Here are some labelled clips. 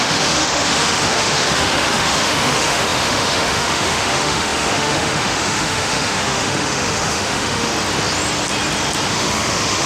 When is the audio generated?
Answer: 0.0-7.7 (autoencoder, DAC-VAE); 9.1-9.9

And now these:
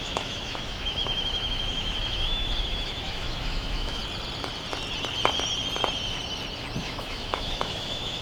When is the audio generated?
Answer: 0.0-4.0 (autoencoder, DAC-VAE); 6.8-8.2